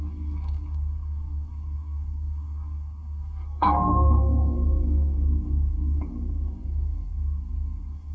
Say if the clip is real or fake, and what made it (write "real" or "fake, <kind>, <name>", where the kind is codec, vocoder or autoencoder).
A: fake, codec, SNAC